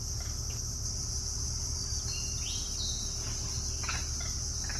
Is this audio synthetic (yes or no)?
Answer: no